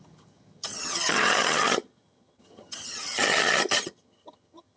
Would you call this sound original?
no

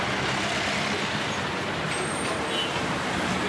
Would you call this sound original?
yes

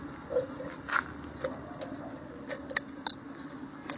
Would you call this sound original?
yes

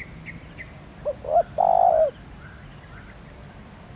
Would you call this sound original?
yes